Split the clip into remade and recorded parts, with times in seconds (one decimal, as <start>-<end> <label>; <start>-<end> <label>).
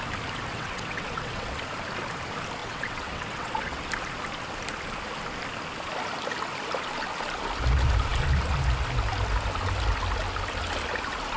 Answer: 0.0-0.5 recorded; 0.5-1.5 remade; 1.5-2.6 recorded; 2.6-3.8 remade; 3.8-11.4 recorded